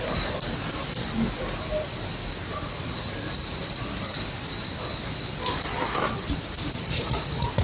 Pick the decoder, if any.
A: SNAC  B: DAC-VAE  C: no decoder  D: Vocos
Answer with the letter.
C